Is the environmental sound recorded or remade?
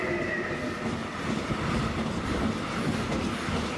recorded